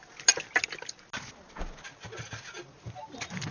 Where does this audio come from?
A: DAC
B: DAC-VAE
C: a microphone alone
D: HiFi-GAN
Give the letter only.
C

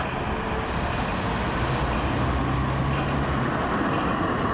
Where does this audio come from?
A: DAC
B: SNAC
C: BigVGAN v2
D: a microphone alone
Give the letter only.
D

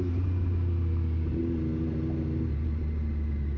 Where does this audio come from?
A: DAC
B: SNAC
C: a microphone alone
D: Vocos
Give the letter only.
C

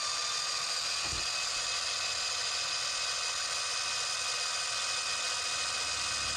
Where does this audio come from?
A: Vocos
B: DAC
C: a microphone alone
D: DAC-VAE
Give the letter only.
C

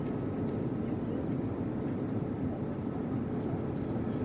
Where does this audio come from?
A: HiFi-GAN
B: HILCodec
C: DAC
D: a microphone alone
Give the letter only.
D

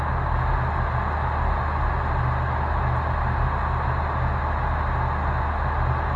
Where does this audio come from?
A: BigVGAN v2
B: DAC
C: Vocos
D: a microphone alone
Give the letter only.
D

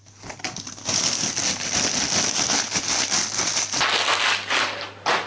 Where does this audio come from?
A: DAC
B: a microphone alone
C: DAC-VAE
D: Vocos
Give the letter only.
B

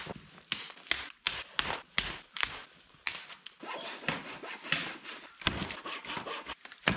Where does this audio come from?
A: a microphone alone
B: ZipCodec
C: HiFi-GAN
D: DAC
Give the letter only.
A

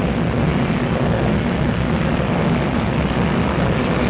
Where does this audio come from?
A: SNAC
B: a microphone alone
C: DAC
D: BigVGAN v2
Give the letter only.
B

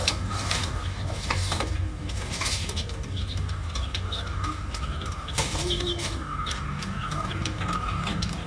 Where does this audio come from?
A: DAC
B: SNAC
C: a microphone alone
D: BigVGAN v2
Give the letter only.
A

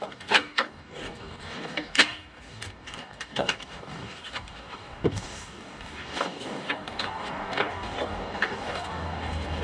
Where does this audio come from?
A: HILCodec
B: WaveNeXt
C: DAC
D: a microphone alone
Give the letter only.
C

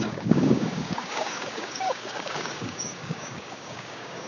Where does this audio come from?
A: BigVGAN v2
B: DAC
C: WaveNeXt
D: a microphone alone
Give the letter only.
B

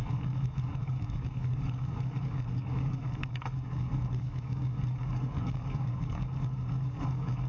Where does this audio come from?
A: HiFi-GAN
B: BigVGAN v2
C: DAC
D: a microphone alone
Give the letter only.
C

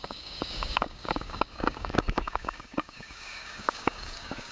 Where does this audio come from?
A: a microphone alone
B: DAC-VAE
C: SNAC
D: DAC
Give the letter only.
D